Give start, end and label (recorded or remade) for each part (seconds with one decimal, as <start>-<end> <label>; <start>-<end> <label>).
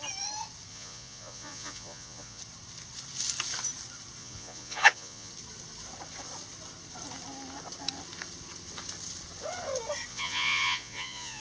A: 0.0-0.7 recorded; 0.7-2.4 remade; 2.4-4.2 recorded; 4.2-5.3 remade; 5.3-10.1 recorded; 10.1-11.4 remade